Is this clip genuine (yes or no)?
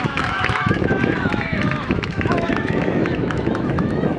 no